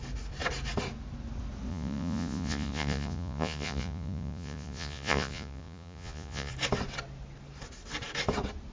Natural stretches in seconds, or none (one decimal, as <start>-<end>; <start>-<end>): 0.0-1.7; 6.5-8.7